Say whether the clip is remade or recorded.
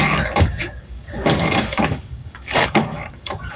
remade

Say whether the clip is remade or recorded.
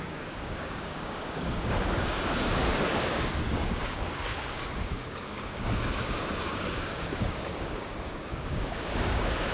remade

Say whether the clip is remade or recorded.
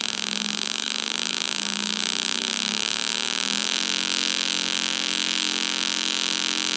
remade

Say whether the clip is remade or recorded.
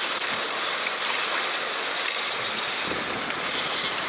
recorded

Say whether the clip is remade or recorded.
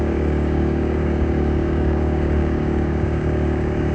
remade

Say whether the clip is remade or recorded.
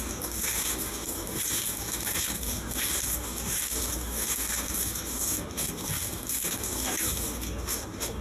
remade